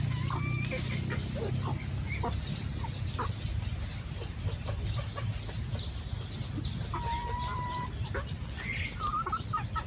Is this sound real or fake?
real